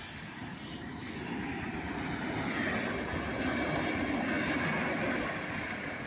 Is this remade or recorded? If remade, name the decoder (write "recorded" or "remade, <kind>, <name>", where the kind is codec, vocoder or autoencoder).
recorded